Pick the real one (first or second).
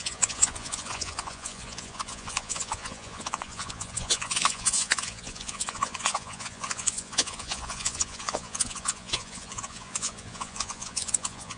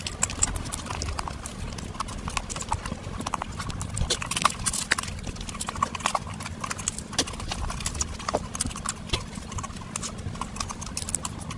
second